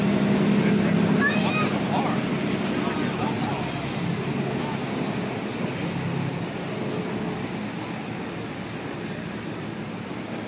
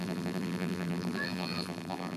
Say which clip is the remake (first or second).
second